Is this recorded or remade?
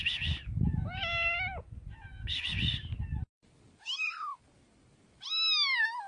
recorded